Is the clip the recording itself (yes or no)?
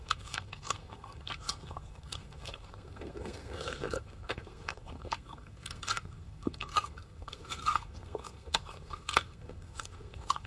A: no